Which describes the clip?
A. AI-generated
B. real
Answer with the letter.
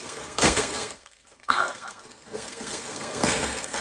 A